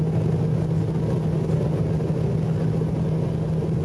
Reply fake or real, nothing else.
real